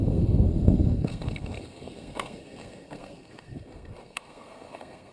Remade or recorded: remade